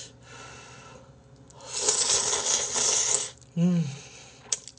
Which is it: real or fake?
real